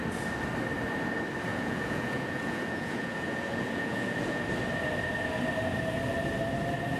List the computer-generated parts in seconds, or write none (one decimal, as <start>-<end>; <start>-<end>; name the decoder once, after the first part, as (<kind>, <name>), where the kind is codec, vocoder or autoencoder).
1.5-4.4 (vocoder, Vocos)